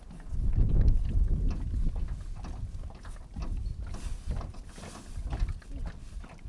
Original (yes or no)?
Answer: yes